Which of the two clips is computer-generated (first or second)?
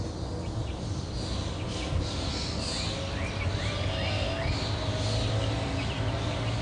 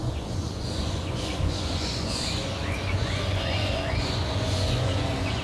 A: second